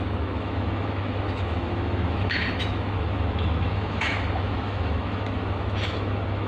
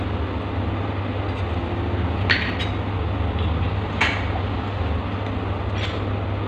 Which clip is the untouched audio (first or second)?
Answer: second